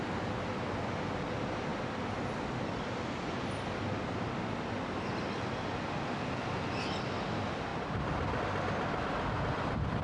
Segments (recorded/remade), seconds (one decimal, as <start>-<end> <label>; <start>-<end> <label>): 0.0-10.0 recorded